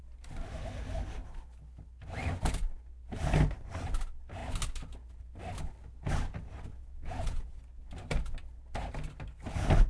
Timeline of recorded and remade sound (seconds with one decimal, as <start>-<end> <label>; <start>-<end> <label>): 0.0-6.7 recorded; 6.7-7.6 remade; 7.6-9.9 recorded